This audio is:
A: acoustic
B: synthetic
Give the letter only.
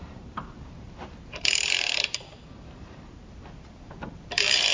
B